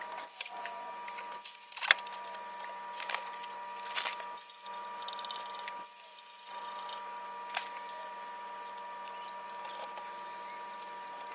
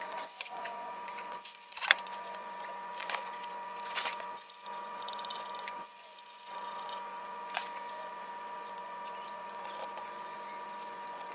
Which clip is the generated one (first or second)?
second